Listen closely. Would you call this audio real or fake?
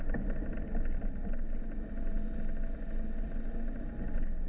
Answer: real